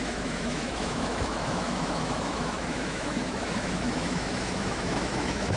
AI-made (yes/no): yes